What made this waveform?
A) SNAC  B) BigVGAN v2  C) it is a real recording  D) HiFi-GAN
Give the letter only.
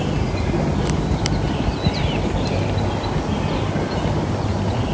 C